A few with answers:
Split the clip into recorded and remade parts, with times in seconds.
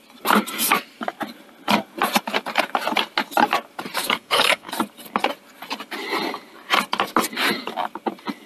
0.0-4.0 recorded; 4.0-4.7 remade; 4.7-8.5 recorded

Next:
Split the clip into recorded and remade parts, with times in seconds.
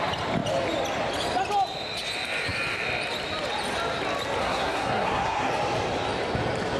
0.0-4.4 recorded; 4.4-5.5 remade; 5.5-6.8 recorded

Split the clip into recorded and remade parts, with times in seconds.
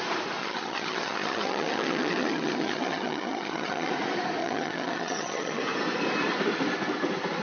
0.0-0.4 recorded; 0.4-3.9 remade; 3.9-4.4 recorded; 4.4-5.6 remade; 5.6-7.4 recorded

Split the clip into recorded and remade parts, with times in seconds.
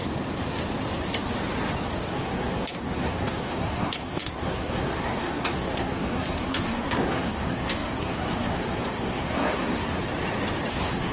0.0-2.1 recorded; 2.1-10.0 remade; 10.0-10.7 recorded; 10.7-11.1 remade